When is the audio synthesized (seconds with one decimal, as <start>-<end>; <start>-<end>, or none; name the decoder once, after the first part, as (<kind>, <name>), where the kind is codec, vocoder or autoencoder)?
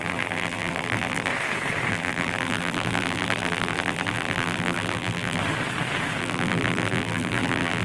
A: 0.0-1.3 (vocoder, BigVGAN v2); 1.9-5.4; 6.2-7.8